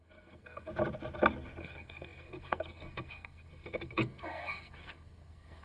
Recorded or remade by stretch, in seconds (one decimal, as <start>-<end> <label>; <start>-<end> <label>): 0.0-0.7 remade; 0.7-1.6 recorded; 1.6-5.6 remade